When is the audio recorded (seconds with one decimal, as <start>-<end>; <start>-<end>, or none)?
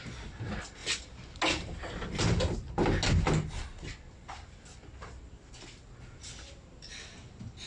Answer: 0.0-7.7